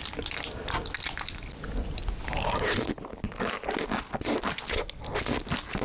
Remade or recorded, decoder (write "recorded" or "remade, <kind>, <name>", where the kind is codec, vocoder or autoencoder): recorded